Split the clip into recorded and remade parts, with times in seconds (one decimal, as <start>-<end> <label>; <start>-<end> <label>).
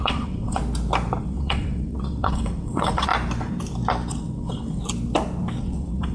0.0-0.6 remade; 0.6-1.2 recorded; 1.2-3.1 remade; 3.1-4.1 recorded; 4.1-4.8 remade; 4.8-5.6 recorded; 5.6-6.1 remade